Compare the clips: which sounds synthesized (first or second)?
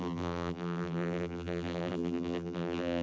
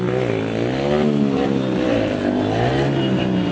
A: first